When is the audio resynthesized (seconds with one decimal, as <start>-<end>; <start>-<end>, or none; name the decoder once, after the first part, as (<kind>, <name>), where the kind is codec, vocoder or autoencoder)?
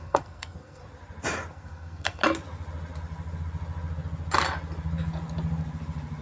0.0-0.8 (codec, SNAC); 1.5-2.2